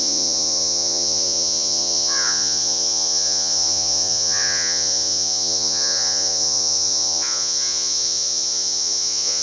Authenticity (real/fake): fake